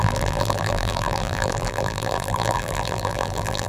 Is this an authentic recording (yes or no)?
no